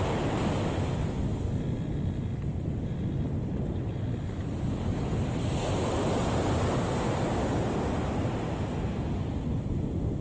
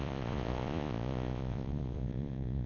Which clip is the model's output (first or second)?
second